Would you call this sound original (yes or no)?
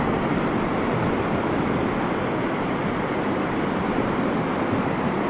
yes